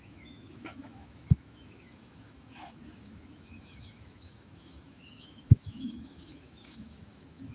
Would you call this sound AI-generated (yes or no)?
yes